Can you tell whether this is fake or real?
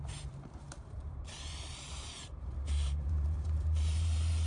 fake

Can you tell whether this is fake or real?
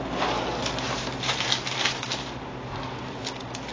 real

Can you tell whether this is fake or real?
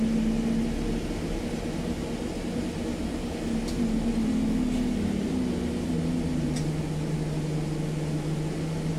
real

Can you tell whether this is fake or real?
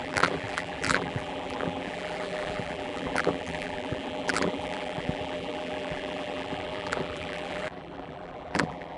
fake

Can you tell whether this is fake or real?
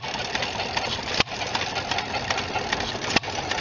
real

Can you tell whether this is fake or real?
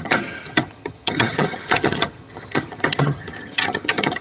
fake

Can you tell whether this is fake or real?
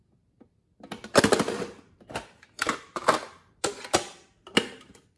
real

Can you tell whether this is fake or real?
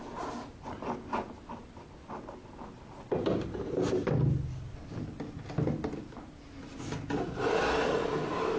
real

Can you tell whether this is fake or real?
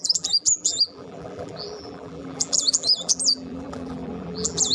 fake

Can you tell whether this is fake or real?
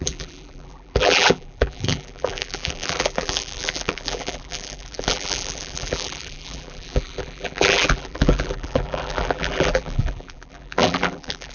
fake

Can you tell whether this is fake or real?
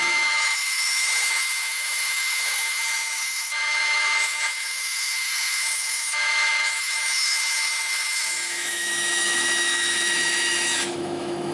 fake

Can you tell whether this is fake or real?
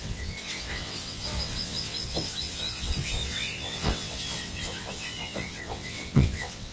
fake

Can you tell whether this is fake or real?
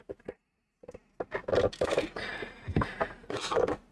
real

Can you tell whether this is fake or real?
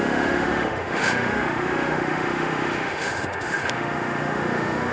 fake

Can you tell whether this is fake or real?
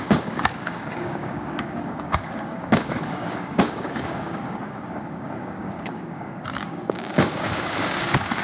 fake